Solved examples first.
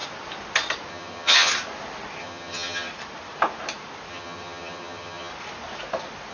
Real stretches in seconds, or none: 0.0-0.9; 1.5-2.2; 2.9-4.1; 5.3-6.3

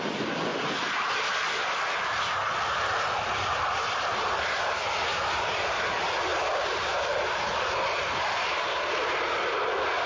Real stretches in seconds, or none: 0.0-10.1

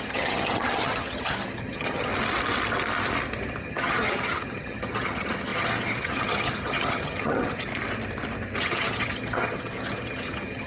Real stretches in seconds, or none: 2.1-3.6; 7.7-8.6

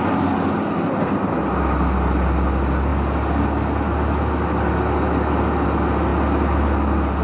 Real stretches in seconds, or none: 0.0-7.2